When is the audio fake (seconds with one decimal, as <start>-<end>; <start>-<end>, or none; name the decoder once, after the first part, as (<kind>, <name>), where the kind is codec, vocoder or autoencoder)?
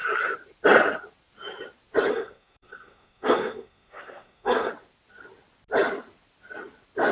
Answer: 2.1-4.7 (codec, SNAC)